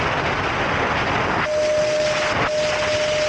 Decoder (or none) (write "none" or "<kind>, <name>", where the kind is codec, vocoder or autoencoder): none